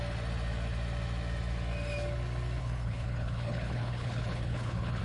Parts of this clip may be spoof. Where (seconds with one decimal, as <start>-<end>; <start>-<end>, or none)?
2.6-5.0

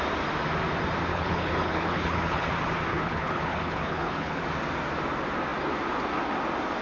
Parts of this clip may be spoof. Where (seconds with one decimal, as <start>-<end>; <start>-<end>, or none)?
1.1-2.5; 2.9-4.4

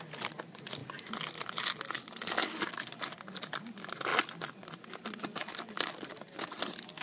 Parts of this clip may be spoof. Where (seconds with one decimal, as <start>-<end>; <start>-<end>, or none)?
none

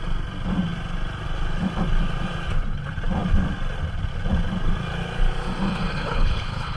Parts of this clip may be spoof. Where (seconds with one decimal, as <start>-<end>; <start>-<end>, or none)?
5.9-6.8